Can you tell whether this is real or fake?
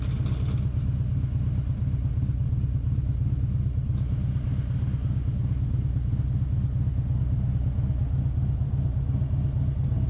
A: real